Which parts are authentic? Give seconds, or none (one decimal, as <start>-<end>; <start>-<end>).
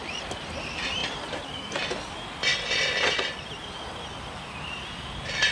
0.0-5.5